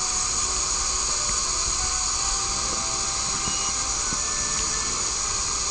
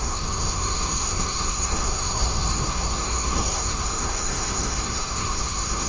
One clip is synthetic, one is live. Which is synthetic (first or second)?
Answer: second